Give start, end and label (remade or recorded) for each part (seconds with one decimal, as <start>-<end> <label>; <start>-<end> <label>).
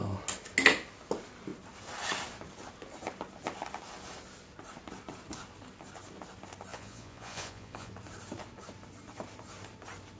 0.0-6.7 recorded; 6.7-7.9 remade; 7.9-10.2 recorded